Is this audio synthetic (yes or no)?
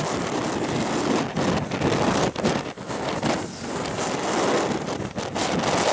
no